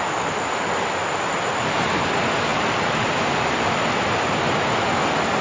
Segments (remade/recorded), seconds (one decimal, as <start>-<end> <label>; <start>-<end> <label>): 0.0-2.5 recorded; 2.5-4.3 remade; 4.3-5.4 recorded